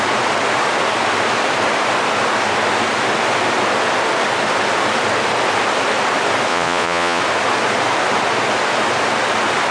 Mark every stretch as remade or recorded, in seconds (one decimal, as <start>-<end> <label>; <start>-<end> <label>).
0.0-6.5 recorded; 6.5-7.2 remade; 7.2-9.7 recorded